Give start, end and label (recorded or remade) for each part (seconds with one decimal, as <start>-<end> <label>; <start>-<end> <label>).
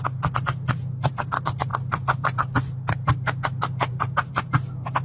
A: 0.0-5.0 recorded